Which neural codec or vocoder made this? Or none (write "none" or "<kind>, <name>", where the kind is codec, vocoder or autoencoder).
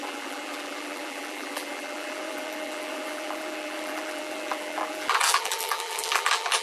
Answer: vocoder, BigVGAN v2